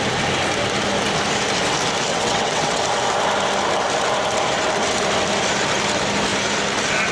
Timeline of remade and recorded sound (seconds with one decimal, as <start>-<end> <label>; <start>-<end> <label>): 0.0-2.1 recorded; 2.1-2.8 remade; 2.8-7.1 recorded